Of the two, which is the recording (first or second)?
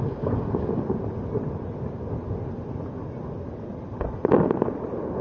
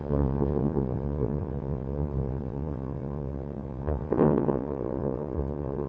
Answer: first